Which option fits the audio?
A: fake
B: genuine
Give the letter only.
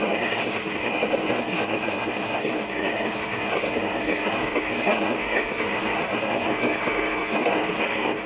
A